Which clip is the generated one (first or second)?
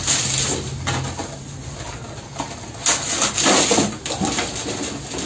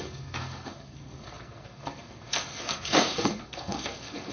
second